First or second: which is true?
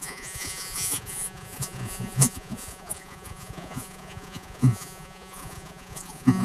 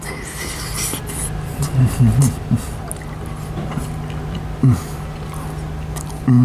second